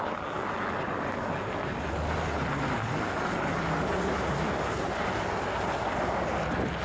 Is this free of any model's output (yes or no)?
yes